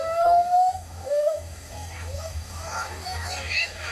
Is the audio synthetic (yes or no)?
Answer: yes